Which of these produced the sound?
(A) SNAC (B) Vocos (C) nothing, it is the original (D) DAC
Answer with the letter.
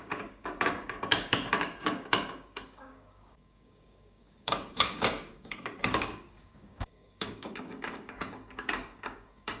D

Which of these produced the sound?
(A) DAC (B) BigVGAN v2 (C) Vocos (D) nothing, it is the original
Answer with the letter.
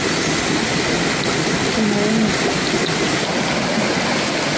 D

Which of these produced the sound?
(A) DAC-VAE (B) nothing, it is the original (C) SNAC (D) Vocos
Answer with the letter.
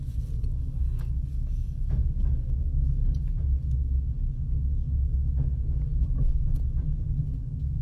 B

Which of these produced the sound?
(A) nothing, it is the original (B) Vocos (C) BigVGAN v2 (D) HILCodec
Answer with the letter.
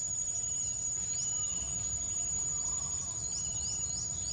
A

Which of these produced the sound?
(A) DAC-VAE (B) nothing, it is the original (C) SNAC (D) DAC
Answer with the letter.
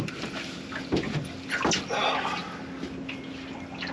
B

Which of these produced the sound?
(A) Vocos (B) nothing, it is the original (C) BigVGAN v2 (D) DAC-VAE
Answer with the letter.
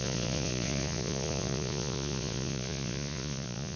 A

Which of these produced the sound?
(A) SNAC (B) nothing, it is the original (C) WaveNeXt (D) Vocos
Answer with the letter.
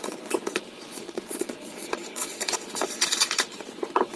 D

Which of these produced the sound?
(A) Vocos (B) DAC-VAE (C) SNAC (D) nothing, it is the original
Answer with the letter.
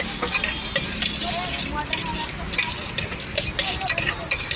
D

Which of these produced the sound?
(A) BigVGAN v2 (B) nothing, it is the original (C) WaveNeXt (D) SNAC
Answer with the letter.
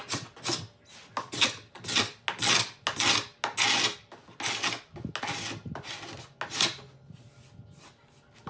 B